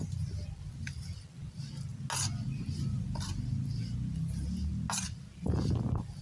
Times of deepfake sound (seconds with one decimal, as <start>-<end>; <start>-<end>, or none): none